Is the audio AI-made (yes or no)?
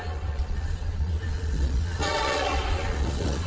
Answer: yes